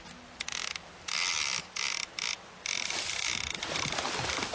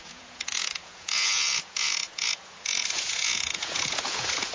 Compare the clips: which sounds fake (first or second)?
second